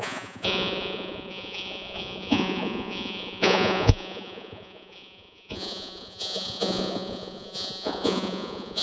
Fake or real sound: fake